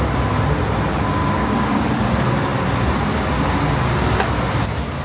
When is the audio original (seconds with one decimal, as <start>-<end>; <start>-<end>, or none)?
0.0-1.2; 1.8-5.0